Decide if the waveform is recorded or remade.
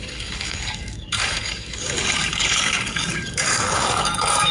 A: remade